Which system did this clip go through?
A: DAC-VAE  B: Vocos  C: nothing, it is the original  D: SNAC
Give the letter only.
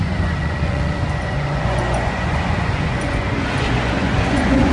B